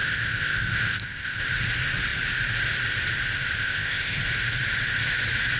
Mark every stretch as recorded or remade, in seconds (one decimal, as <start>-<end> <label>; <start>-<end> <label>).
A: 0.0-1.4 remade; 1.4-3.6 recorded; 3.6-4.2 remade; 4.2-5.6 recorded